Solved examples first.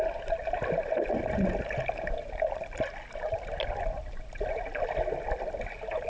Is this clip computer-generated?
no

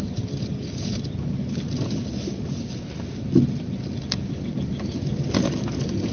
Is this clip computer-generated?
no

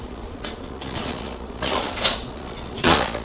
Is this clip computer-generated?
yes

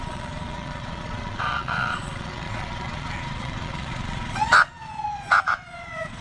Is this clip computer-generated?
yes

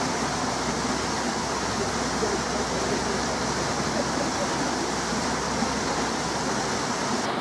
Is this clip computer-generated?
no